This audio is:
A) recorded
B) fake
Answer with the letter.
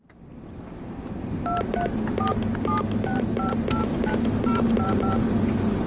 B